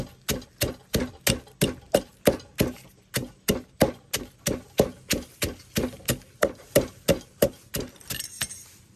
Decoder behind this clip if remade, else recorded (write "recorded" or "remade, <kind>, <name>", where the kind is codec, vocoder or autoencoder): recorded